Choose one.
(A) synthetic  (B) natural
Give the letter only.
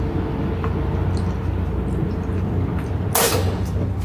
B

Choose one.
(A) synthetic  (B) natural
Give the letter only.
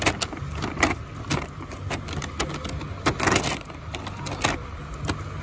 B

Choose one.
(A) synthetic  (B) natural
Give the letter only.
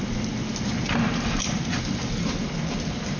B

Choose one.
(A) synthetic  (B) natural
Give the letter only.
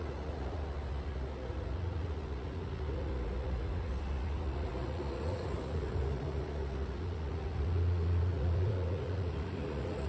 A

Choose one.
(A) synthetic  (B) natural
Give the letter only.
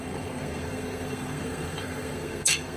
A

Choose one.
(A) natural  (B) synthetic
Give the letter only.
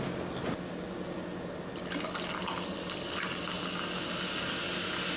A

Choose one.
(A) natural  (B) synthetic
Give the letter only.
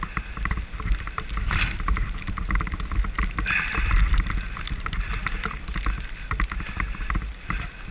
A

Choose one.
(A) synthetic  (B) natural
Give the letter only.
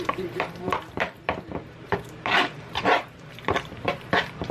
A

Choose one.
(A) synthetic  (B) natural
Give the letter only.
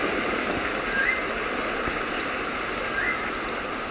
B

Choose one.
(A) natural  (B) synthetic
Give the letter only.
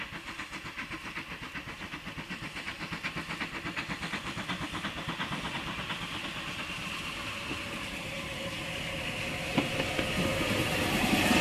A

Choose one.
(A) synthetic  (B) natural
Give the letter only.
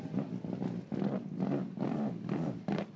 B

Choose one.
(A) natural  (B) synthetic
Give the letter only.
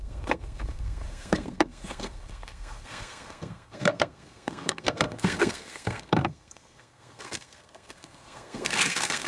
B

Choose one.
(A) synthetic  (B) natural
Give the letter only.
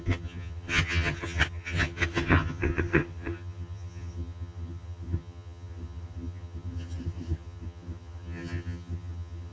A